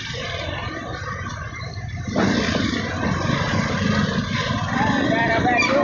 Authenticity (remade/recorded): remade